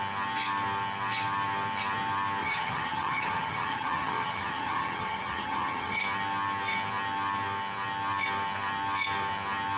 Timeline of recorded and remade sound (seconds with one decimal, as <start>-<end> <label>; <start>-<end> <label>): 0.0-2.4 recorded; 2.4-6.0 remade; 6.0-9.8 recorded